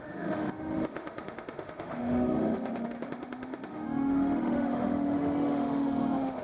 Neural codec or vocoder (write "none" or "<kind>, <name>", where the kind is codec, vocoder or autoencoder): autoencoder, DAC-VAE